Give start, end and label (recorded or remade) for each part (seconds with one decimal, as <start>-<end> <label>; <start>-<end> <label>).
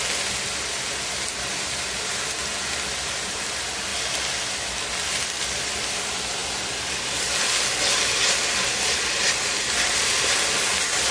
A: 0.0-11.1 recorded